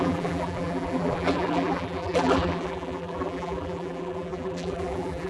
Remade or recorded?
remade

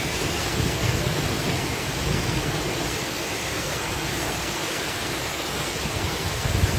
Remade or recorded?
remade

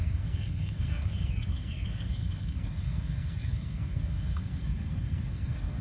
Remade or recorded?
remade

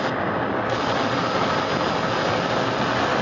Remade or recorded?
recorded